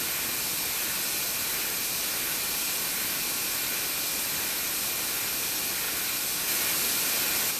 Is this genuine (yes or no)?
yes